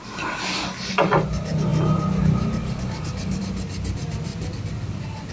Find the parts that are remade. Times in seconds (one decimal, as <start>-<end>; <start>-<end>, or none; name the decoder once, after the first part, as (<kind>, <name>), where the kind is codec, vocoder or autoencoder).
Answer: 2.6-3.4 (codec, DAC)